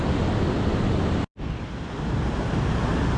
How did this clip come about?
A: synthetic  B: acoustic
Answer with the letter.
B